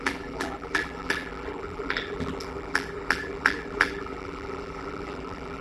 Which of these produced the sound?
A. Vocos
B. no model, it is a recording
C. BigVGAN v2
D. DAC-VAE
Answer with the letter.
C